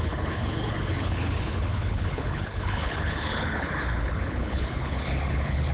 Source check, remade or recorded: remade